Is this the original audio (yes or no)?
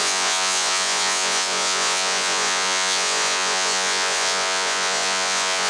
no